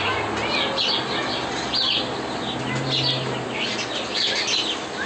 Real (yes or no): yes